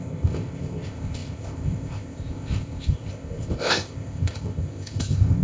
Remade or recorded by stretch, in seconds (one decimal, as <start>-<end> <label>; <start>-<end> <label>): 0.0-5.4 remade